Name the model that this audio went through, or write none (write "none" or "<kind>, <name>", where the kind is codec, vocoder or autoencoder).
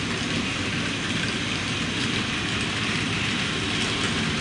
none